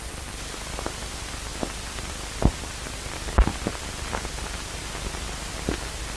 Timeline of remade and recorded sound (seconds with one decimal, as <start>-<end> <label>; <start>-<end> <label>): 0.0-6.2 recorded